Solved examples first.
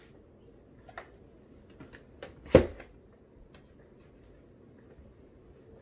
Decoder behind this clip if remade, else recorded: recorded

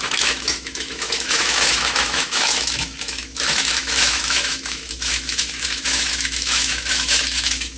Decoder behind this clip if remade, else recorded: remade, autoencoder, DAC-VAE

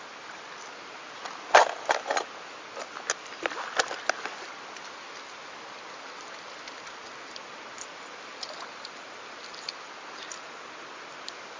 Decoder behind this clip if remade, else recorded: recorded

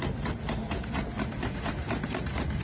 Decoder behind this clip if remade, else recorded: recorded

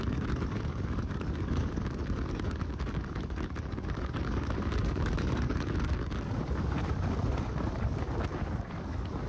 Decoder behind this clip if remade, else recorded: remade, codec, DAC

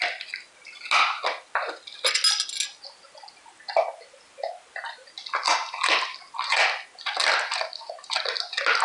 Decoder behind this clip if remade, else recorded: recorded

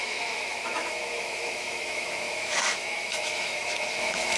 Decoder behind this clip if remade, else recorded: remade, autoencoder, DAC-VAE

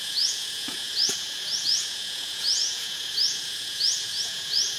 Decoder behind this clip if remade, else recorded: remade, vocoder, Vocos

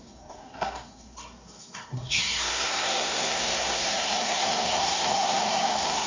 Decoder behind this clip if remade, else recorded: remade, codec, SNAC